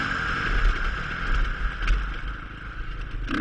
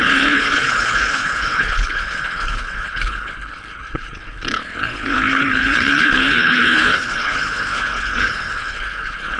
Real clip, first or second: first